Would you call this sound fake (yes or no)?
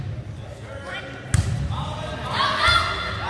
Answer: no